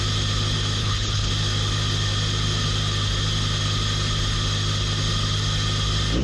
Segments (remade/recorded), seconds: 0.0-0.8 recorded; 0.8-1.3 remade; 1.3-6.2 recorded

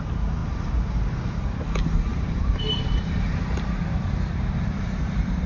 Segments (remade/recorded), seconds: 0.0-0.4 recorded; 0.4-0.9 remade; 0.9-2.1 recorded; 2.1-5.5 remade